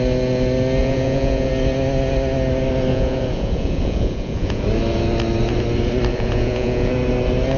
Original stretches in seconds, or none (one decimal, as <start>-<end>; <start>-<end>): 0.0-0.8; 1.5-2.9; 4.6-6.1; 6.9-7.6